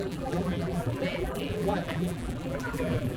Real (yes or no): no